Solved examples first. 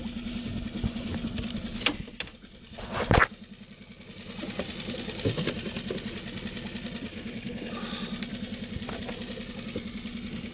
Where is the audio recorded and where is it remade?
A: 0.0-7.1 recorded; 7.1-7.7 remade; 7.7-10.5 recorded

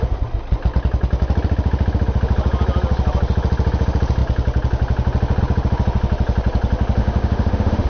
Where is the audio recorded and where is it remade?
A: 0.0-7.0 recorded; 7.0-7.9 remade

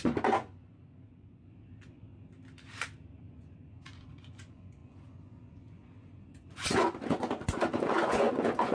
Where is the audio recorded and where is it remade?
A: 0.0-2.1 remade; 2.1-3.2 recorded; 3.2-8.7 remade

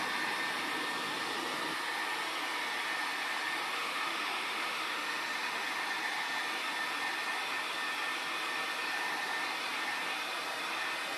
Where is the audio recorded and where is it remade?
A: 0.0-3.8 recorded; 3.8-5.7 remade; 5.7-11.2 recorded

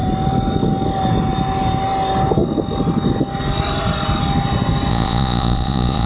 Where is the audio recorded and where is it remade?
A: 0.0-4.9 recorded; 4.9-6.1 remade